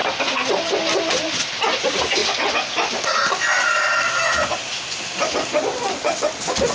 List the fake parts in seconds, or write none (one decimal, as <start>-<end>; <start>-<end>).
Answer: 0.5-2.2; 3.8-6.7